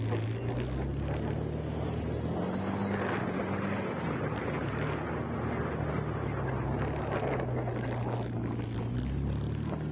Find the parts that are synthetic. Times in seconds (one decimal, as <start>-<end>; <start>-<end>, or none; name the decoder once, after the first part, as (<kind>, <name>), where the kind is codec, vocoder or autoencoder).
none